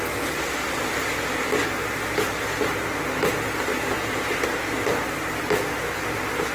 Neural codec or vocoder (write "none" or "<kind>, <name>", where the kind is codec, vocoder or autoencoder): none